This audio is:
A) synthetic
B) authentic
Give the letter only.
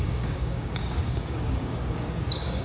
A